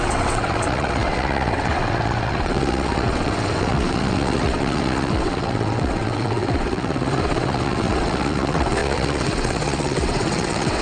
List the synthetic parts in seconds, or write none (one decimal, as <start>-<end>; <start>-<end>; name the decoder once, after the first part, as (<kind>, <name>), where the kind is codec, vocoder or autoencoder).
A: 0.0-10.8 (vocoder, WaveNeXt)